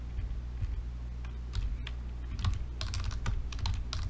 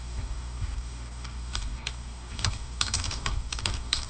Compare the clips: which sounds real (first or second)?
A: first